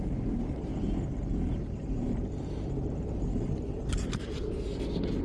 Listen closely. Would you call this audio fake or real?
fake